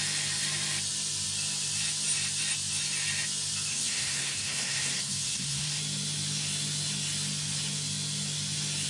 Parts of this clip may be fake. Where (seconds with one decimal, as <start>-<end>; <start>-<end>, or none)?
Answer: 3.7-5.8